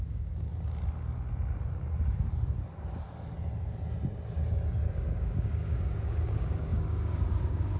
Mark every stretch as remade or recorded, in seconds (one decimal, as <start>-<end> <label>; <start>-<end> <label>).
0.0-0.5 remade; 0.5-4.9 recorded; 4.9-7.8 remade